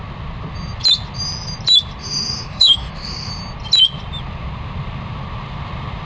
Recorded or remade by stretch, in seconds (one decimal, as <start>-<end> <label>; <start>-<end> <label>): 0.0-2.0 recorded; 2.0-3.3 remade; 3.3-6.1 recorded